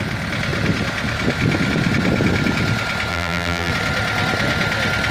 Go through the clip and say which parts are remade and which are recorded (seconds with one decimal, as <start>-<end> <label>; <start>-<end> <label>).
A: 0.0-3.1 recorded; 3.1-3.7 remade; 3.7-5.1 recorded